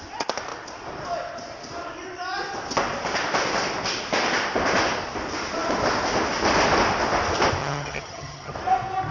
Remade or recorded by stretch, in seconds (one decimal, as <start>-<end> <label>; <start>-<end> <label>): 0.0-7.6 recorded; 7.6-8.5 remade; 8.5-9.1 recorded

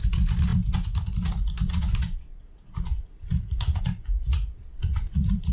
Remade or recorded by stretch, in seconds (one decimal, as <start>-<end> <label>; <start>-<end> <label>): 0.0-5.5 remade

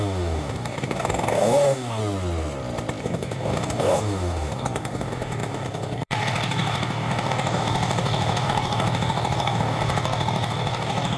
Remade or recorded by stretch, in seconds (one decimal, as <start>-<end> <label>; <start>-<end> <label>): 0.0-2.0 remade; 2.0-3.0 recorded; 3.0-11.2 remade

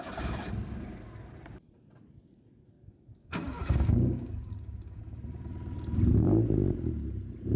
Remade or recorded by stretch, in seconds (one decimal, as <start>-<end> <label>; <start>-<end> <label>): 0.0-3.2 recorded; 3.2-5.0 remade; 5.0-7.6 recorded

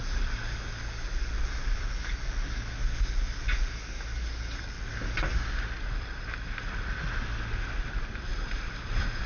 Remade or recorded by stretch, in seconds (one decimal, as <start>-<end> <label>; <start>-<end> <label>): 0.0-9.3 recorded

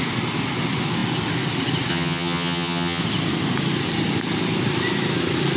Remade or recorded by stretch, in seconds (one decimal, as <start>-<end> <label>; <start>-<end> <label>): 0.0-1.9 recorded; 1.9-3.0 remade; 3.0-5.6 recorded